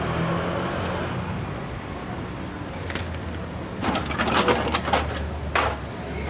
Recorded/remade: recorded